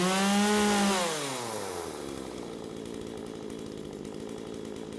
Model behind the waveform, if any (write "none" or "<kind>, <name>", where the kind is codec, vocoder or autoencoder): none